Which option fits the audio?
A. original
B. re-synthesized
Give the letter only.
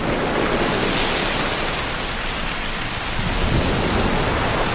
A